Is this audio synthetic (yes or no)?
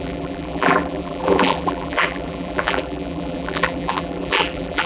yes